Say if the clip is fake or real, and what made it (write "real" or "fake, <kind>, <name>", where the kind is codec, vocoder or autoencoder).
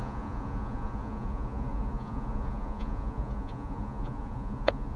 fake, vocoder, Vocos